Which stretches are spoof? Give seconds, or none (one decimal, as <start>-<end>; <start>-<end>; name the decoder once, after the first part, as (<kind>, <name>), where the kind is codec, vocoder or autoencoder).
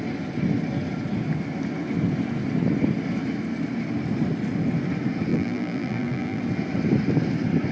5.3-6.4 (vocoder, BigVGAN v2)